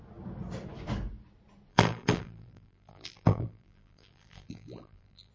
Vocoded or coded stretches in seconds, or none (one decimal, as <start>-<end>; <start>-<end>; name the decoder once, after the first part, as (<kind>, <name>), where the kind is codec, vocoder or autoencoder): 1.7-5.3 (vocoder, BigVGAN v2)